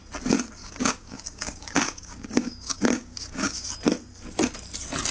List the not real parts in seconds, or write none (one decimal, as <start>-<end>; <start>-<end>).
0.6-3.7